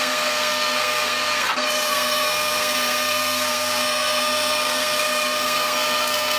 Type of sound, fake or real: fake